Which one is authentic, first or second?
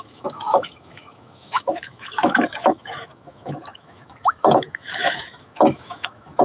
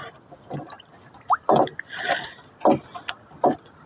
second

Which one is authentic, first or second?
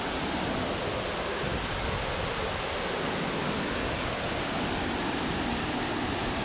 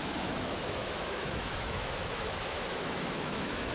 first